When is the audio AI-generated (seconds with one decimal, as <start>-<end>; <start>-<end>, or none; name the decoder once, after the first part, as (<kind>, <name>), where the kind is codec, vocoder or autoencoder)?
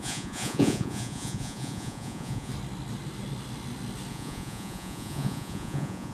0.0-2.5 (vocoder, Vocos); 4.1-6.1